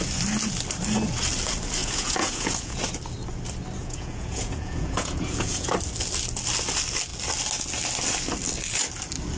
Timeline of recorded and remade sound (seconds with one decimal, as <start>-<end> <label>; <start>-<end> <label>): 0.0-1.8 recorded; 1.8-2.8 remade; 2.8-3.8 recorded; 3.8-5.7 remade; 5.7-9.4 recorded